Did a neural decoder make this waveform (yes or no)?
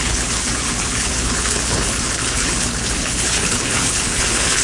yes